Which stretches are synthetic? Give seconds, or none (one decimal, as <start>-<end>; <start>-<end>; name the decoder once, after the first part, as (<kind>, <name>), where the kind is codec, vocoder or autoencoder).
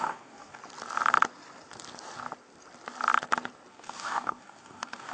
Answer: 0.0-0.6 (codec, DAC); 3.7-5.1